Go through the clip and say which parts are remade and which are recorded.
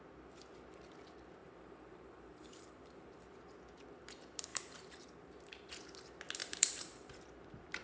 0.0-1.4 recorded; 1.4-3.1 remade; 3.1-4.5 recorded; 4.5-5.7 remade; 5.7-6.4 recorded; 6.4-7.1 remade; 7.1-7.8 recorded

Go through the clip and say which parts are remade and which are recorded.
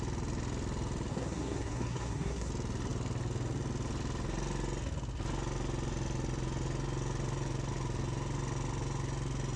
0.0-1.1 recorded; 1.1-2.5 remade; 2.5-9.6 recorded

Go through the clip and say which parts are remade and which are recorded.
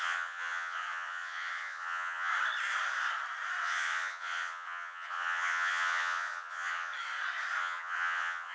0.0-2.3 remade; 2.3-3.6 recorded; 3.6-6.9 remade; 6.9-7.6 recorded; 7.6-8.5 remade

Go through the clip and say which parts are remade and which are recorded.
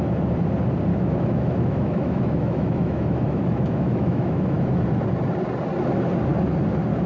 0.0-0.9 recorded; 0.9-4.8 remade; 4.8-7.1 recorded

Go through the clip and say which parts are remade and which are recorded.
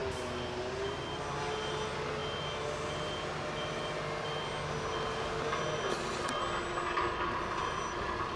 0.0-8.4 recorded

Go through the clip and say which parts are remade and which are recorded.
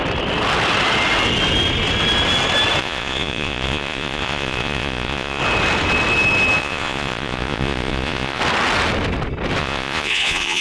0.0-2.8 recorded; 2.8-5.4 remade; 5.4-6.6 recorded; 6.6-8.4 remade; 8.4-9.6 recorded; 9.6-10.6 remade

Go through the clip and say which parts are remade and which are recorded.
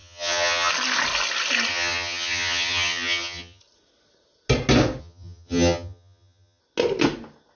0.0-0.7 remade; 0.7-1.7 recorded; 1.7-3.6 remade; 3.6-5.0 recorded; 5.0-6.6 remade; 6.6-7.6 recorded